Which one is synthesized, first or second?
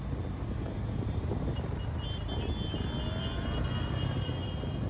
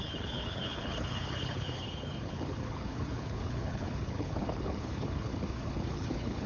second